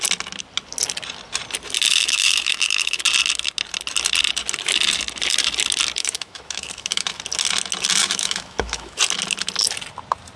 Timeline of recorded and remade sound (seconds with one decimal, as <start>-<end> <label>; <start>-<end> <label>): 0.0-1.9 recorded; 1.9-3.0 remade; 3.0-6.0 recorded; 6.0-7.2 remade; 7.2-8.0 recorded; 8.0-9.0 remade; 9.0-10.4 recorded